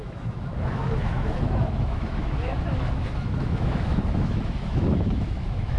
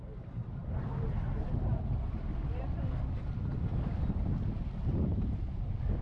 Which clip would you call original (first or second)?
second